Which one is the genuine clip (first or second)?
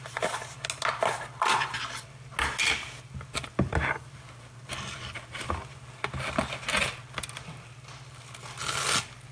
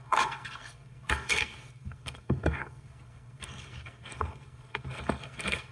first